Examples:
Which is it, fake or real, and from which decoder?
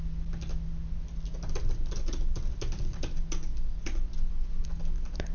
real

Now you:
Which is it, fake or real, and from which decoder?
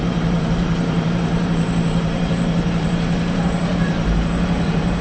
fake, vocoder, BigVGAN v2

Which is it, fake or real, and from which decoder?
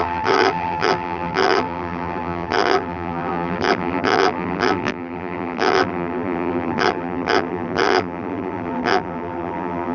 fake, vocoder, BigVGAN v2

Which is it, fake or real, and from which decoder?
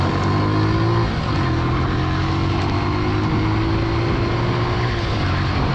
real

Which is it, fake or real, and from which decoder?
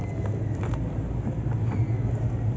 real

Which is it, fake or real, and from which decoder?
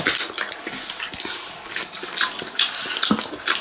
real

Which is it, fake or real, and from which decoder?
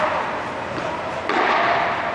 real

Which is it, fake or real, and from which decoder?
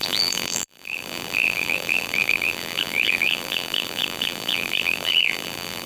fake, vocoder, BigVGAN v2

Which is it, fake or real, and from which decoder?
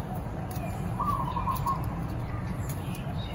fake, vocoder, BigVGAN v2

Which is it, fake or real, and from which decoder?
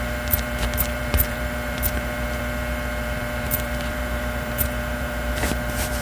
fake, vocoder, BigVGAN v2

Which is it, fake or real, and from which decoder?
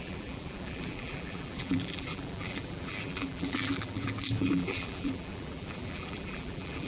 fake, vocoder, BigVGAN v2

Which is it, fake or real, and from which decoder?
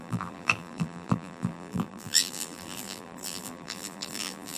fake, vocoder, BigVGAN v2